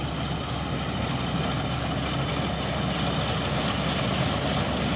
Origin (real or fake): real